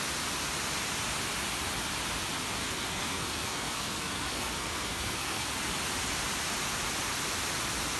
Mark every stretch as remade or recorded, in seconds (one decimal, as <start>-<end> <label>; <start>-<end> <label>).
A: 0.0-2.6 recorded; 2.6-5.5 remade; 5.5-8.0 recorded